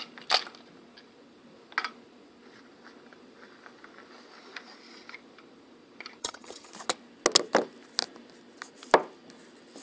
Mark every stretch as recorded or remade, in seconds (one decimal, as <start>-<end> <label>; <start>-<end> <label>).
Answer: 0.0-6.2 recorded; 6.2-6.7 remade; 6.7-9.8 recorded